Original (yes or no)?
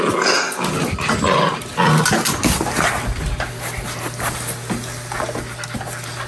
yes